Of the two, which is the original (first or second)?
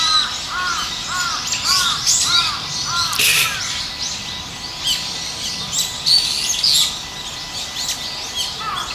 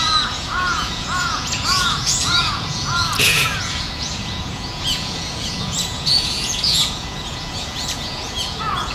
first